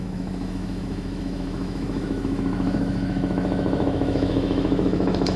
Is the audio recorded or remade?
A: remade